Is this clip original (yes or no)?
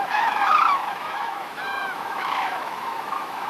no